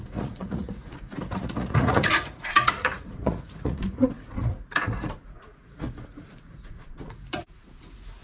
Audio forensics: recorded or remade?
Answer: remade